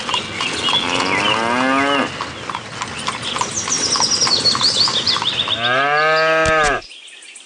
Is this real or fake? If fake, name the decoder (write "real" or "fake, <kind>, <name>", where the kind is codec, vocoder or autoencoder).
real